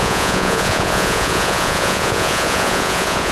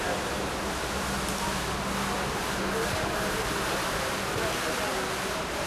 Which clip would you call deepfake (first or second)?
first